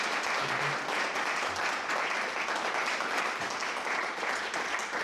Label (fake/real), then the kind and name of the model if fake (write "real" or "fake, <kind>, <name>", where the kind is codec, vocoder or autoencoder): real